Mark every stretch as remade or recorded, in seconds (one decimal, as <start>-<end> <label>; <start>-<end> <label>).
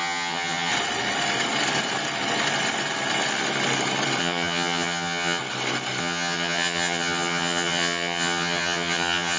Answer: 0.0-0.7 remade; 0.7-4.2 recorded; 4.2-5.4 remade; 5.4-6.0 recorded; 6.0-9.4 remade